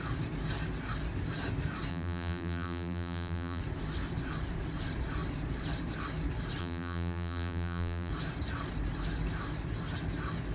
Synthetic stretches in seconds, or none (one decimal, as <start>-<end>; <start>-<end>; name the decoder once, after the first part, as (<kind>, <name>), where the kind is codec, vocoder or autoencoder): 1.9-3.6 (vocoder, BigVGAN v2); 6.6-8.1